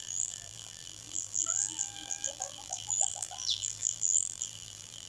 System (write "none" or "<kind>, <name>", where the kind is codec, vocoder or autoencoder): vocoder, BigVGAN v2